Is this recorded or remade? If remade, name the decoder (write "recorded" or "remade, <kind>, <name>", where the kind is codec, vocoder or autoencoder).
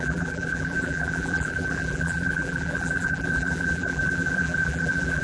remade, vocoder, BigVGAN v2